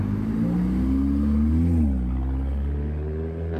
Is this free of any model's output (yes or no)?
yes